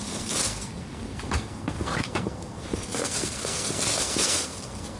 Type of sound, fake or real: fake